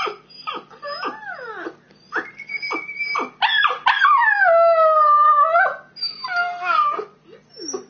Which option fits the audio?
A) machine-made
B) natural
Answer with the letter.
B